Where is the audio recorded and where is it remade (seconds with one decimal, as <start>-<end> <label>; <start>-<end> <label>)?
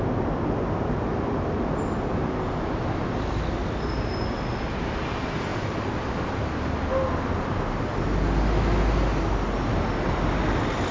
0.0-10.9 recorded